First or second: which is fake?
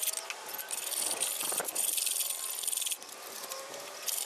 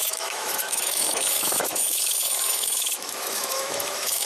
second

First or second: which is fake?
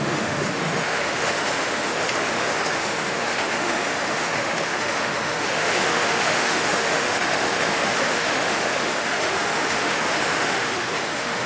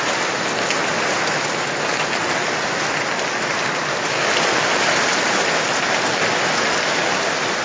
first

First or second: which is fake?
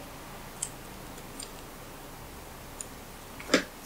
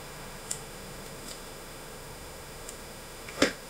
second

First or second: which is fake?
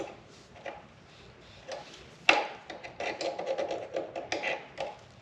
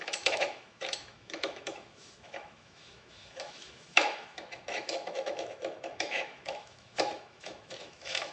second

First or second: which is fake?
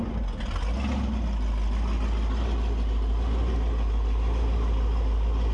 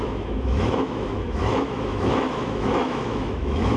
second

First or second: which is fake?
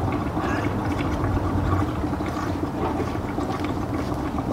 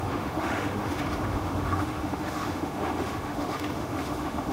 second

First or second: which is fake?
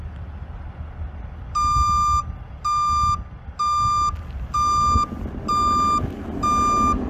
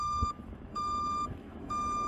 second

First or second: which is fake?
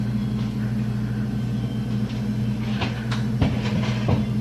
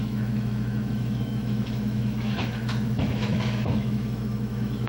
second